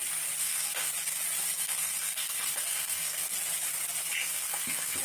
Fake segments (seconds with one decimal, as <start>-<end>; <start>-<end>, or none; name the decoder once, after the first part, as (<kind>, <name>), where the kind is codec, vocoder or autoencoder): 0.4-0.9 (codec, SNAC); 1.6-3.3; 4.2-5.0